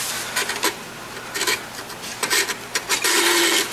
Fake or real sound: real